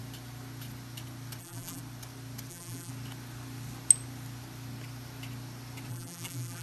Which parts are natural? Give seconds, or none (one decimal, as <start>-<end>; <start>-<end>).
0.0-1.4; 1.8-2.5; 2.9-5.9